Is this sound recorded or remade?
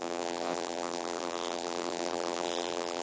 remade